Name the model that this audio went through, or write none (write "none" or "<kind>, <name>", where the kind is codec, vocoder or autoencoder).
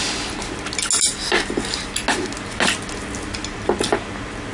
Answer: none